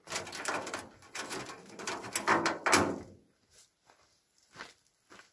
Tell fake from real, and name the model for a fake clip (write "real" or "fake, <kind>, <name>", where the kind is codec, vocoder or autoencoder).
real